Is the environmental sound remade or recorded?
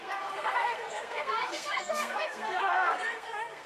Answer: remade